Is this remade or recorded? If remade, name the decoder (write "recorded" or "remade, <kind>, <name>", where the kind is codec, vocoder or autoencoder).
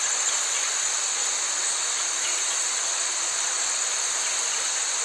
recorded